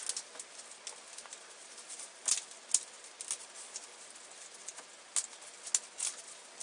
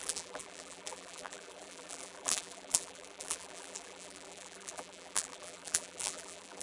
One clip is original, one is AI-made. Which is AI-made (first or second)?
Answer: second